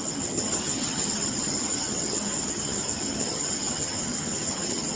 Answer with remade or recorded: remade